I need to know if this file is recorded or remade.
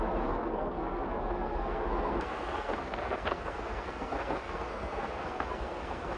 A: remade